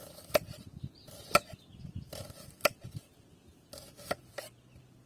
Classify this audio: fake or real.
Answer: real